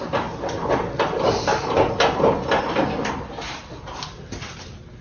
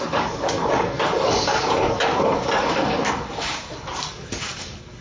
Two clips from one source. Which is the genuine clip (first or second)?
first